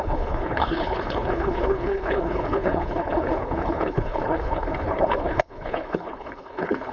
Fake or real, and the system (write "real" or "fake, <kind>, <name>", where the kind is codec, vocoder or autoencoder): fake, codec, HILCodec